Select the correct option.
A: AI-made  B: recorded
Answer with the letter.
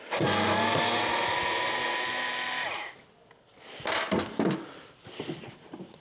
B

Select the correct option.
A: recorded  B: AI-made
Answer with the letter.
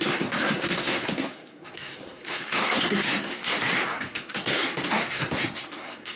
B